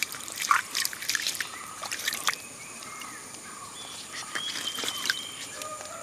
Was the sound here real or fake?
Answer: fake